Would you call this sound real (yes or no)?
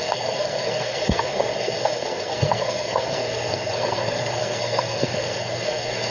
no